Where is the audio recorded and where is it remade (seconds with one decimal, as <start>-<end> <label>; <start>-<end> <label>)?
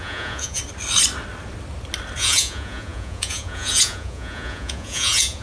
0.0-0.6 remade; 0.6-2.2 recorded; 2.2-5.4 remade